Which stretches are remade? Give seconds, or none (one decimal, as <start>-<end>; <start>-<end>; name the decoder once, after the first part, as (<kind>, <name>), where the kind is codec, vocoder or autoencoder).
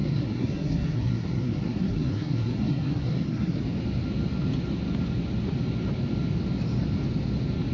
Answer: 0.0-3.6 (codec, SNAC)